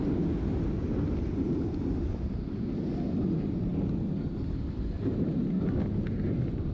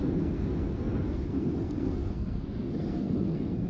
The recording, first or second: first